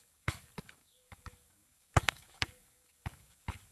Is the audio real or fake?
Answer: fake